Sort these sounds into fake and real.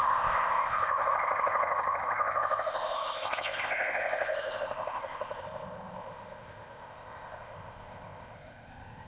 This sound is fake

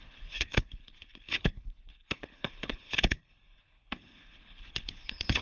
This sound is fake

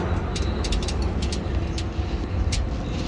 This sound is real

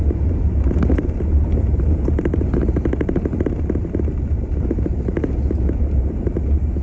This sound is fake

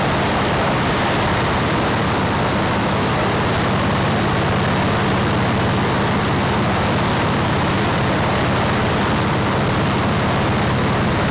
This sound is real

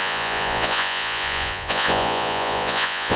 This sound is fake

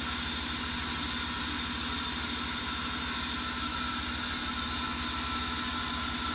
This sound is real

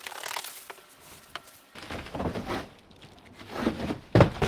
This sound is fake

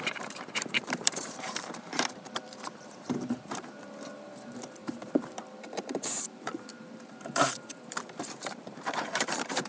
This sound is fake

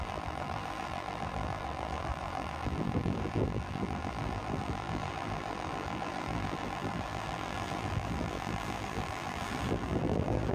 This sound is fake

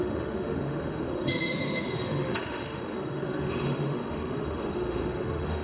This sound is fake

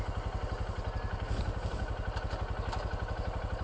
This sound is real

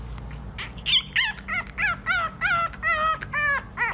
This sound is real